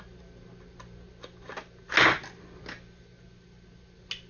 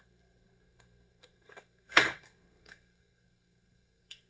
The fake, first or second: second